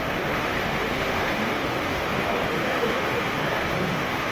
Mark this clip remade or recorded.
remade